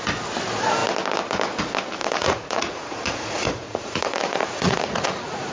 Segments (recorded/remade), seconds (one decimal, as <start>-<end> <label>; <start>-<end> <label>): 0.0-2.0 recorded; 2.0-5.5 remade